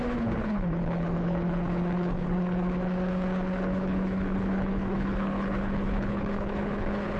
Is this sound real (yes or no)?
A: no